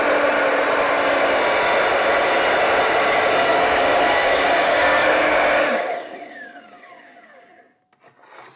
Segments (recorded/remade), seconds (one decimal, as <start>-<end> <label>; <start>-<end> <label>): 0.0-3.5 recorded; 3.5-7.6 remade; 7.6-8.6 recorded

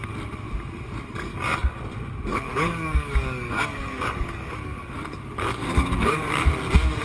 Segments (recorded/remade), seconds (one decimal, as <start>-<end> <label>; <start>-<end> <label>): 0.0-1.3 recorded; 1.3-1.8 remade; 1.8-2.3 recorded; 2.3-6.5 remade; 6.5-7.0 recorded

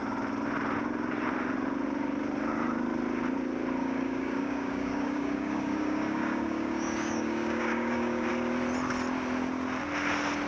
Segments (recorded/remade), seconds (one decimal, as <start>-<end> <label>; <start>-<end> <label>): 0.0-3.8 recorded; 3.8-8.3 remade; 8.3-10.5 recorded

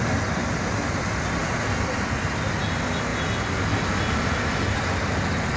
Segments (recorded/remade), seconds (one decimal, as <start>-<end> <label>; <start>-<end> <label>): 0.0-5.6 recorded

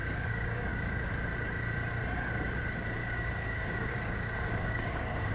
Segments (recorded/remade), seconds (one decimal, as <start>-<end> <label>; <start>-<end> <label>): 0.0-1.1 remade; 1.1-3.0 recorded; 3.0-5.3 remade

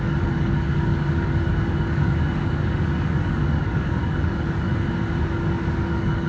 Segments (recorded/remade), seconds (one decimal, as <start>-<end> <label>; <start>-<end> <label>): 0.0-4.7 remade; 4.7-5.2 recorded; 5.2-6.3 remade